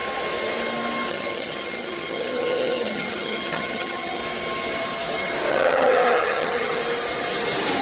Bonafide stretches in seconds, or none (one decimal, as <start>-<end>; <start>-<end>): 0.0-1.1; 4.2-5.5; 6.8-7.8